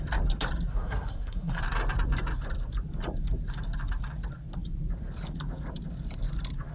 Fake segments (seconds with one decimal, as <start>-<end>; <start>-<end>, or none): 0.7-1.6